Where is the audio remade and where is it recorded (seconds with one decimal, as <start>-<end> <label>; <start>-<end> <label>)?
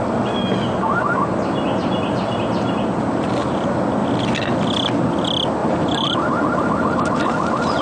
0.0-5.6 recorded; 5.6-7.8 remade